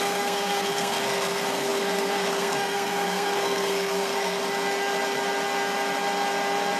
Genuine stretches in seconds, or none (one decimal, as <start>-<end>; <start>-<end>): 4.4-6.8